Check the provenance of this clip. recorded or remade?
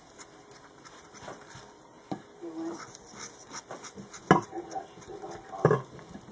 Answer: recorded